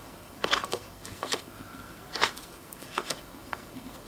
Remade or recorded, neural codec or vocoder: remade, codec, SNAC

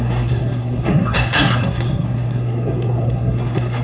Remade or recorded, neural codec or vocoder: remade, codec, SNAC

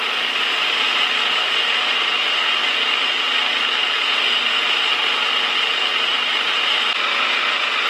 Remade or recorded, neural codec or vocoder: recorded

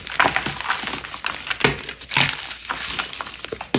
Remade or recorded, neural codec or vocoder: recorded